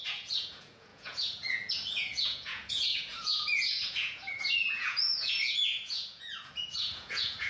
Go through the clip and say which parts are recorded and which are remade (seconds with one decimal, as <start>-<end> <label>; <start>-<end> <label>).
0.0-7.5 remade